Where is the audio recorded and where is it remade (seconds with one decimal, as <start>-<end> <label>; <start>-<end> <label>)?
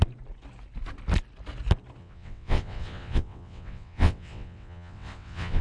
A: 0.0-2.0 recorded; 2.0-5.6 remade